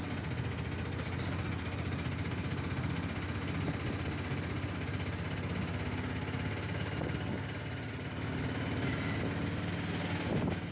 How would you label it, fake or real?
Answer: real